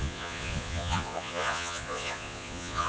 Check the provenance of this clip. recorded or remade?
remade